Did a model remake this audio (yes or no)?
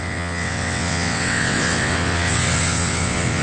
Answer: yes